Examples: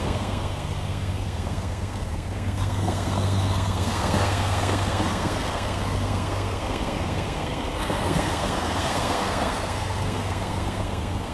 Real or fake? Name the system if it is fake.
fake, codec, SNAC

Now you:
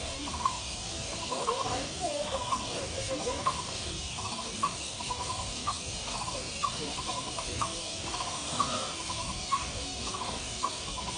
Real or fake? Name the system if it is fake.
fake, codec, DAC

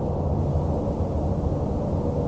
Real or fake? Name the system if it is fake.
real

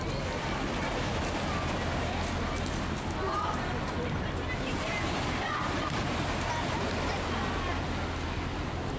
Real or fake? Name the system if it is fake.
real